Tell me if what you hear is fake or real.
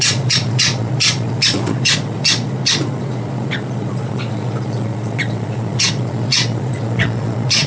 fake